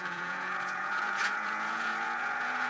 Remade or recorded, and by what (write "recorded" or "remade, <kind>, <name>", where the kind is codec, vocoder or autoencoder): remade, vocoder, Vocos